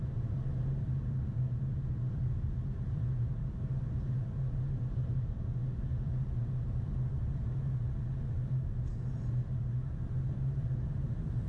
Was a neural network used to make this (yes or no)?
yes